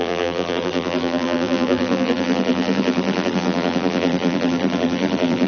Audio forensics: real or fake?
fake